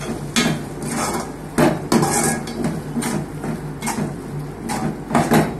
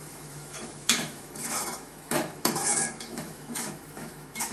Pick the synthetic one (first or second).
second